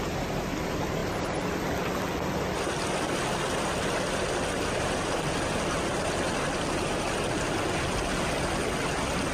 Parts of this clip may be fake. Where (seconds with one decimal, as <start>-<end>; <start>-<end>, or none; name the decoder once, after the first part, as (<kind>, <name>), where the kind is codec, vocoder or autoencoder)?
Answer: none